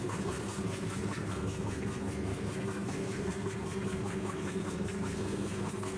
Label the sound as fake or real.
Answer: fake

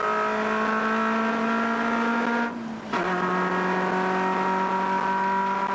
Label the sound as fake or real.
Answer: real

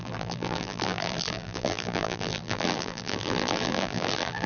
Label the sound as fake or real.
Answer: fake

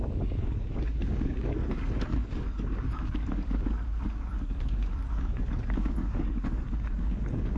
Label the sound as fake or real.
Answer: fake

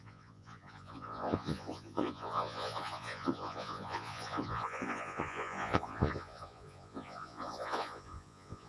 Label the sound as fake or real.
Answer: fake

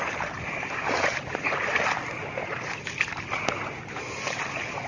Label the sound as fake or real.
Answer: fake